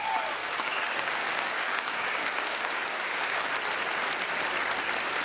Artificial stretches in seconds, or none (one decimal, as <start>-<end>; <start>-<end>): 0.4-3.5

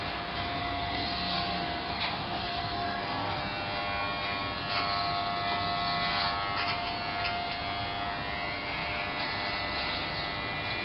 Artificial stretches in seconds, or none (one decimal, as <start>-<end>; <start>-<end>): 0.6-3.4

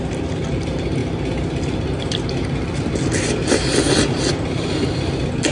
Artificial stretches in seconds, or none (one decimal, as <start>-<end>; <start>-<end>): none

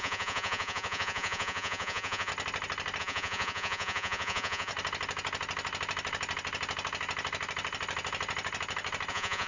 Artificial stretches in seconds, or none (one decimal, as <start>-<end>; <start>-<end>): 0.0-2.3; 3.0-4.7; 9.1-9.5

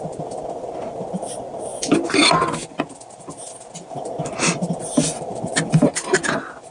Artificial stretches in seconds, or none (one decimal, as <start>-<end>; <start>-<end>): none

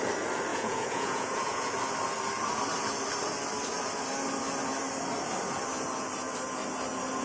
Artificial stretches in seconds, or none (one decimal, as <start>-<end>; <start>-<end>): 0.5-1.7